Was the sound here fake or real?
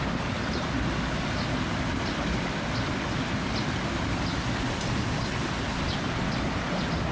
real